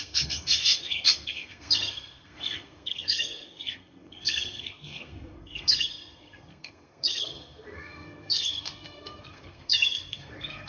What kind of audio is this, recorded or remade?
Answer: remade